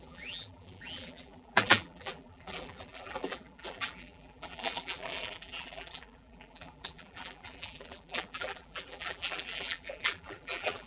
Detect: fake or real fake